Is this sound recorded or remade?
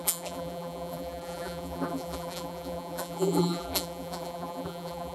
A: remade